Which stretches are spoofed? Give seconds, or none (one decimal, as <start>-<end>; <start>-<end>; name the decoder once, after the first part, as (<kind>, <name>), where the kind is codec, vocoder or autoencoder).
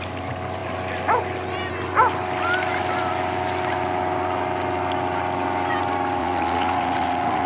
6.2-7.5 (vocoder, Vocos)